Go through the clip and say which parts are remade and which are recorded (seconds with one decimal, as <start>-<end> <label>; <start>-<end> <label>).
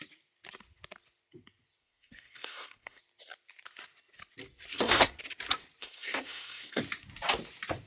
0.0-1.8 recorded; 1.8-3.0 remade; 3.0-4.7 recorded; 4.7-5.2 remade; 5.2-5.8 recorded; 5.8-6.8 remade; 6.8-7.9 recorded